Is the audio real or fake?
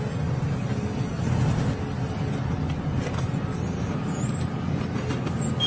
real